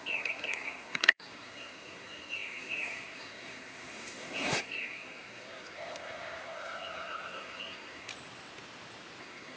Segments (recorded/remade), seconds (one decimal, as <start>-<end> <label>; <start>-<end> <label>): 0.0-8.1 remade; 8.1-9.2 recorded; 9.2-9.6 remade